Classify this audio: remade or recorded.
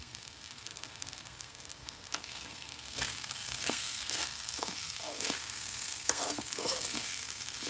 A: remade